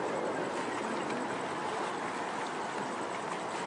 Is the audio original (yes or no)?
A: yes